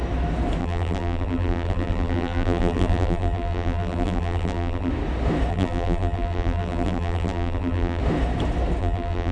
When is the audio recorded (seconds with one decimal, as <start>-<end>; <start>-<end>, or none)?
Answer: 0.0-0.6; 4.9-5.5; 8.0-8.8